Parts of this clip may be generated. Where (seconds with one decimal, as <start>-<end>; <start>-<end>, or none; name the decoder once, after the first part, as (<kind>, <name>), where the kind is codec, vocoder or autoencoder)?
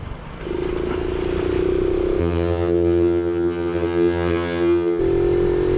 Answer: 2.2-5.0 (vocoder, HiFi-GAN)